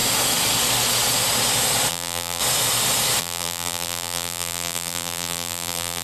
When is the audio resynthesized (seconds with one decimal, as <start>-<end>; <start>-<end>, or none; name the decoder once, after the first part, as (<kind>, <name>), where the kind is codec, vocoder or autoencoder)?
1.9-2.4 (vocoder, BigVGAN v2); 3.2-6.0